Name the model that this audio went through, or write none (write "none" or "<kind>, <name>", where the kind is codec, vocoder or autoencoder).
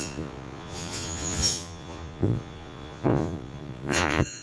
vocoder, Vocos